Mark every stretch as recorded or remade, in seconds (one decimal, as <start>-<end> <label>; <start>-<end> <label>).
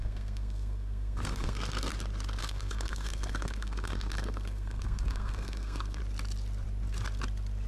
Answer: 0.0-1.9 remade; 1.9-2.4 recorded; 2.4-6.0 remade; 6.0-7.7 recorded